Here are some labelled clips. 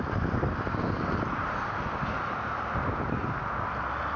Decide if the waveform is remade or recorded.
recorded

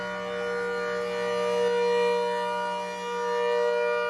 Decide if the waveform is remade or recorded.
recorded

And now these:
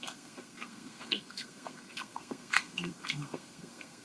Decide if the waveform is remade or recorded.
remade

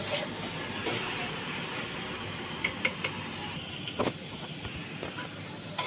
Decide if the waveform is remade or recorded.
recorded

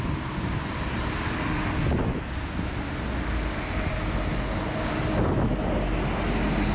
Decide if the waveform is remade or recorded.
recorded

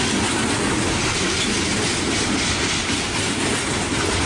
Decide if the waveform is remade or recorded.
recorded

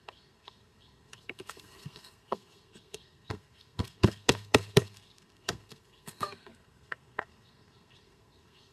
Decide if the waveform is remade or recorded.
remade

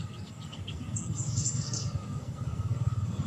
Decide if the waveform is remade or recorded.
remade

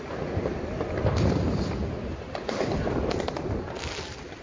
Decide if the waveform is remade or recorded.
recorded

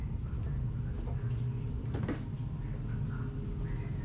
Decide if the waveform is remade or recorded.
recorded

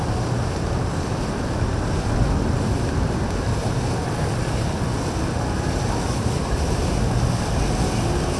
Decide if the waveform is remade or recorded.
recorded